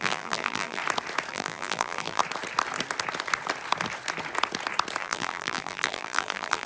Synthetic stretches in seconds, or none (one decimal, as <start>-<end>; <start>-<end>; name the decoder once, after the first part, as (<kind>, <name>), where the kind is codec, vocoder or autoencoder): 0.0-0.8 (vocoder, BigVGAN v2); 1.3-2.2; 5.0-6.7